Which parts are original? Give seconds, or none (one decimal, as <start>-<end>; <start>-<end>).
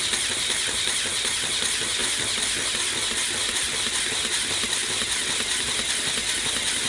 0.0-6.9